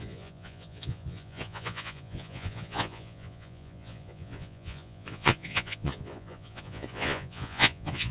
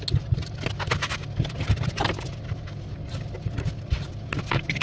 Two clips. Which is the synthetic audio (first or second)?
first